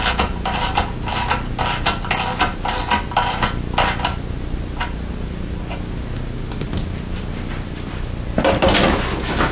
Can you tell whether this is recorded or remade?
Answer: recorded